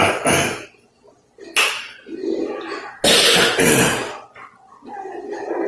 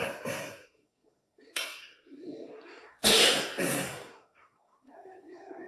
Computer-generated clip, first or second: second